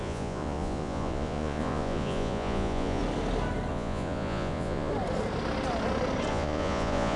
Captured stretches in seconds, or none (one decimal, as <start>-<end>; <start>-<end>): 3.0-3.7; 4.9-6.3